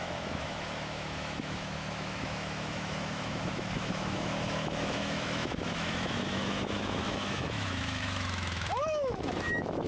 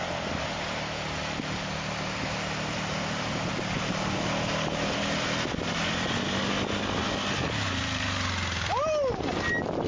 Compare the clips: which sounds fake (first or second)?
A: first